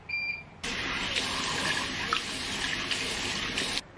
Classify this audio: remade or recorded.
remade